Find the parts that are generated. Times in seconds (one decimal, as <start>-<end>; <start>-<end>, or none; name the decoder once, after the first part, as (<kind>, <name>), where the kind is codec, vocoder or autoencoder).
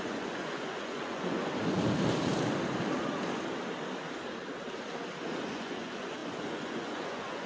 0.0-1.4 (vocoder, Vocos); 5.5-7.5